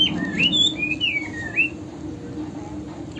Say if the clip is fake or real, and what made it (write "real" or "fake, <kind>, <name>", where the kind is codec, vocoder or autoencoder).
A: real